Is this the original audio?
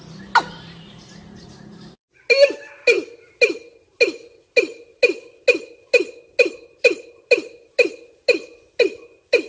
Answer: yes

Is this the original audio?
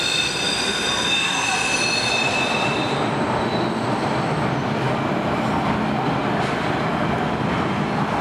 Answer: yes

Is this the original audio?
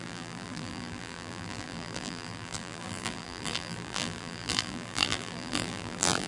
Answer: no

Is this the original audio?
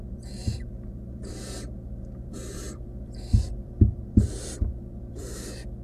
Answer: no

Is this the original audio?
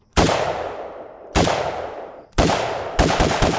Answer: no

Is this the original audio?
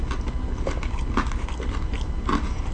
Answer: yes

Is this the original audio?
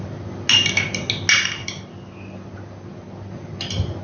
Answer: yes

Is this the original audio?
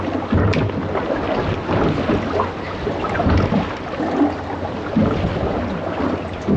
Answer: yes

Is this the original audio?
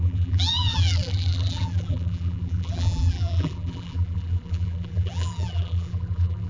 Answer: no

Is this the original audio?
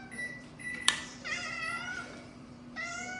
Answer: no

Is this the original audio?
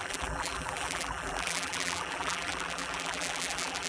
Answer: no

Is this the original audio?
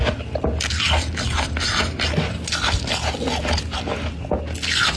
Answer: yes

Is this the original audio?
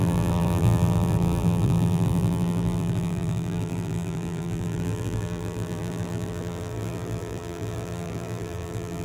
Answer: no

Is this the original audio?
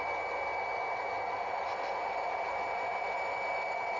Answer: yes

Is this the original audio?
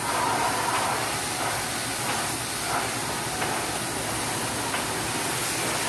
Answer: yes